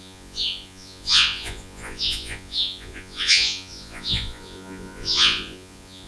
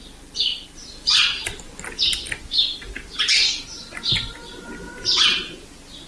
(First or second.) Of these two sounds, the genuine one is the second